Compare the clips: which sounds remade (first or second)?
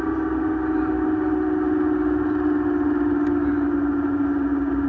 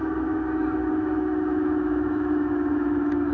second